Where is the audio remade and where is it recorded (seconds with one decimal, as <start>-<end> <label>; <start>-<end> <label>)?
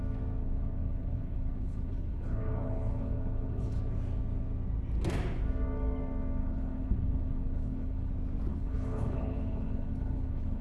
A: 0.0-0.4 recorded; 0.4-3.8 remade; 3.8-6.4 recorded; 6.4-8.1 remade; 8.1-8.5 recorded; 8.5-10.6 remade